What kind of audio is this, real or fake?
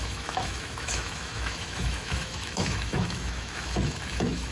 fake